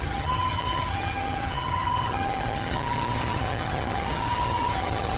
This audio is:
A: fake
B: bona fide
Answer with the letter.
A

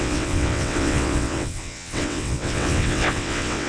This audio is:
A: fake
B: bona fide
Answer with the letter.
A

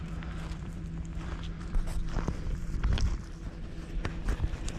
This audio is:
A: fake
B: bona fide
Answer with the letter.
A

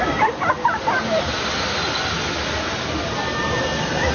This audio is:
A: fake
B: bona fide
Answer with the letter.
B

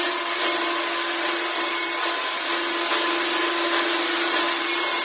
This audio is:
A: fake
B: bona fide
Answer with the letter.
B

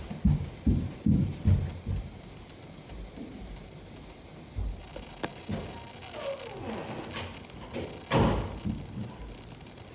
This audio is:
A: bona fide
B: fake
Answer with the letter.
A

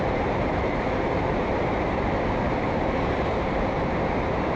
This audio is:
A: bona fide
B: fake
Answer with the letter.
B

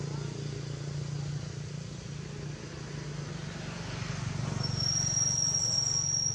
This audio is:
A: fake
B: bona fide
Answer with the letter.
B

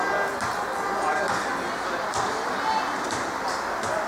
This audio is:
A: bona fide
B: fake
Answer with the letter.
A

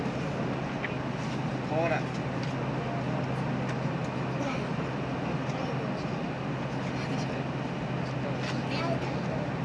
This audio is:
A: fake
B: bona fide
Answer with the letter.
B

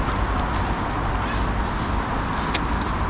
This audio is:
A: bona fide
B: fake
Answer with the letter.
A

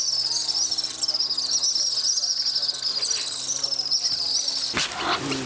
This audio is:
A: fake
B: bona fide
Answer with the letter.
B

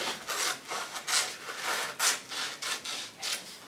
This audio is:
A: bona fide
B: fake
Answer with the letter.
A